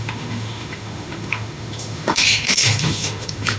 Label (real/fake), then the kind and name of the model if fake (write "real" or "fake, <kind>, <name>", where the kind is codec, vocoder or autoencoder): fake, autoencoder, DAC-VAE